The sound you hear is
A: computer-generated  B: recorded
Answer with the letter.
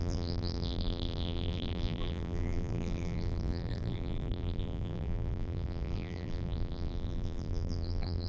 A